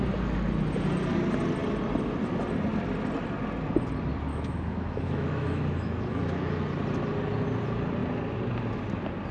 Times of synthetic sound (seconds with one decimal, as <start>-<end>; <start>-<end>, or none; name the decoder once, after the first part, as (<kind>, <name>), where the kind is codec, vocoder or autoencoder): 4.3-6.5 (autoencoder, DAC-VAE)